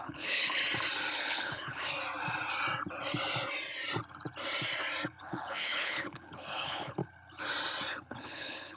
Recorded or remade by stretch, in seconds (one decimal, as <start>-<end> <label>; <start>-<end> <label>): 0.0-0.6 remade; 0.6-1.2 recorded; 1.2-1.8 remade; 1.8-5.2 recorded; 5.2-7.0 remade; 7.0-7.9 recorded; 7.9-8.8 remade